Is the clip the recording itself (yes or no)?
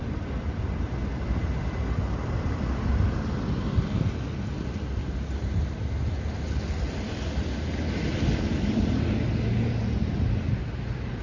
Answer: yes